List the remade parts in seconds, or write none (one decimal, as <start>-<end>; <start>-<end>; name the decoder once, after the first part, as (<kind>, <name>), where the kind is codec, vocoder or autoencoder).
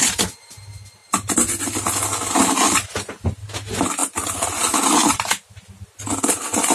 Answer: none